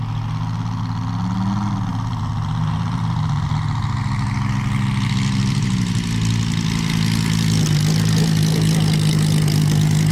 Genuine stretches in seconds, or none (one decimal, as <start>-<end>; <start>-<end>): 0.0-1.9; 3.5-10.1